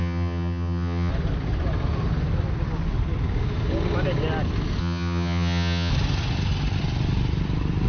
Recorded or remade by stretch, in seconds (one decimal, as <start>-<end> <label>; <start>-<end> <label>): 0.0-1.1 remade; 1.1-4.8 recorded; 4.8-5.9 remade; 5.9-7.9 recorded